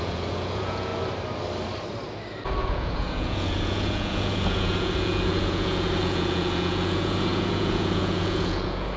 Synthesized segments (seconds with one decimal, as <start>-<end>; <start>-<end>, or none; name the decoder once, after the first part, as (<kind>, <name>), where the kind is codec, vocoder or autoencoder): 0.0-0.9 (vocoder, Vocos); 2.6-9.0